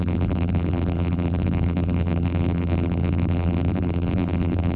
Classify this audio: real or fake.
fake